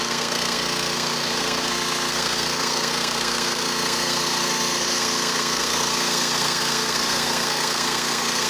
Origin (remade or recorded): remade